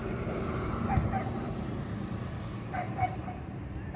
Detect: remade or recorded remade